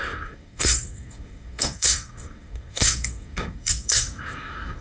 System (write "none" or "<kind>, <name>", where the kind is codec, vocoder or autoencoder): codec, SNAC